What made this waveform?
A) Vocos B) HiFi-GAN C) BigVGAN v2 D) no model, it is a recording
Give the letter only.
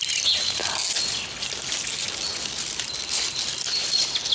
D